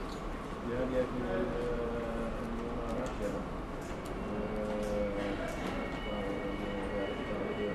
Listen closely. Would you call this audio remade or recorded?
recorded